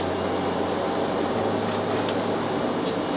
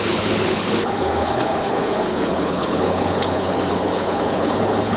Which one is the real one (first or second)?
first